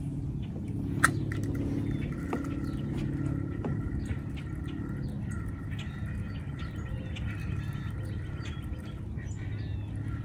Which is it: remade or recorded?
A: recorded